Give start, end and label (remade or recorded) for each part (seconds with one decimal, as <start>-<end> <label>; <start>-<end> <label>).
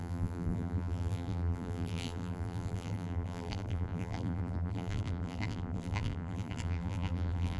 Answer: 0.0-7.6 remade